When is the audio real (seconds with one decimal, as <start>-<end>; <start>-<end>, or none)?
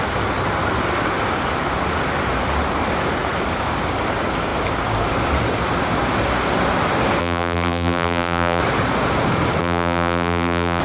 0.0-7.2; 8.6-9.6